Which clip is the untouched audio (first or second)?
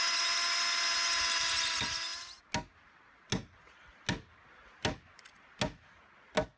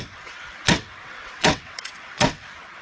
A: first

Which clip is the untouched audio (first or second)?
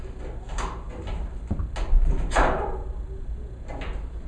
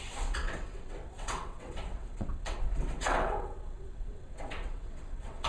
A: first